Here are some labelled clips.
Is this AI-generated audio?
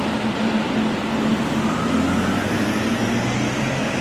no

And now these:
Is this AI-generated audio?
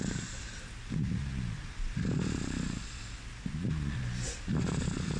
no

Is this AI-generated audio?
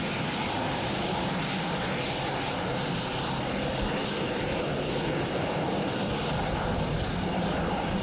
no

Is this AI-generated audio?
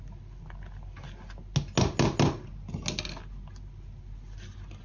no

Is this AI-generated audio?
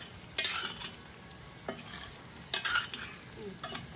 no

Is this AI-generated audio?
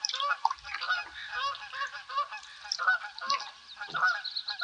no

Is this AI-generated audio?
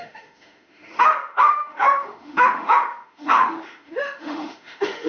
yes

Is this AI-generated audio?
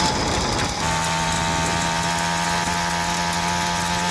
no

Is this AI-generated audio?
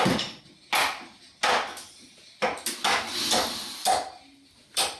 no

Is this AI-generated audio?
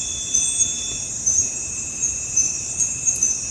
yes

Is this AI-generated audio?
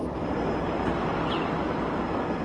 no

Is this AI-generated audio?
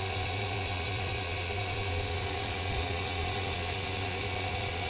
yes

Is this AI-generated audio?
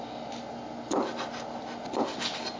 no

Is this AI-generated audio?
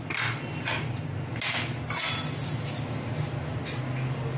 no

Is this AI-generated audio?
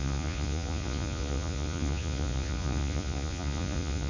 yes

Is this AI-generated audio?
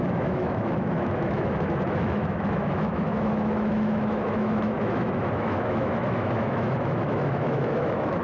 yes